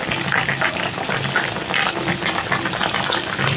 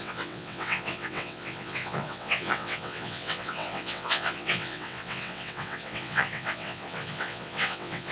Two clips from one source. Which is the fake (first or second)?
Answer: second